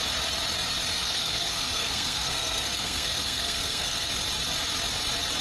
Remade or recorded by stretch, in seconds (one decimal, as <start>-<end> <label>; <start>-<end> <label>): 0.0-0.9 recorded; 0.9-4.1 remade; 4.1-5.4 recorded